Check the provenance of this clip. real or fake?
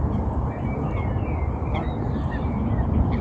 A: real